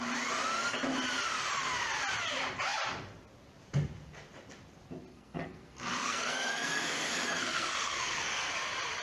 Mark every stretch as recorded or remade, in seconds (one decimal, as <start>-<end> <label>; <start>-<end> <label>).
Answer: 0.0-5.1 recorded; 5.1-8.5 remade; 8.5-9.0 recorded